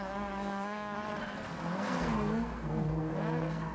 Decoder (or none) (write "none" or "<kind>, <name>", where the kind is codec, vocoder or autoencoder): codec, SNAC